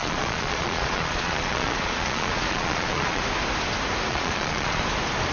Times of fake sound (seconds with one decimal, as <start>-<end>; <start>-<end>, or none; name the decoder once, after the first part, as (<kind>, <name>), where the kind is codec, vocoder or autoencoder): 0.0-3.2 (vocoder, Vocos); 4.1-4.8